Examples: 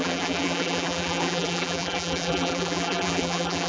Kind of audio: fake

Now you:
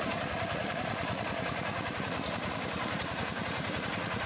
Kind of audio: fake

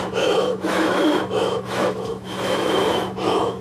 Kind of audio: fake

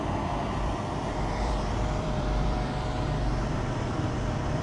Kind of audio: fake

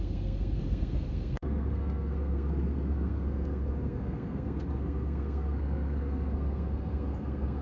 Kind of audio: fake